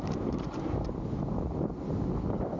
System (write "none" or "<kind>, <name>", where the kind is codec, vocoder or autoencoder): none